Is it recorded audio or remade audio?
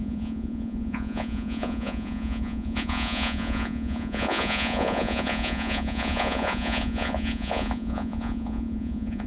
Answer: remade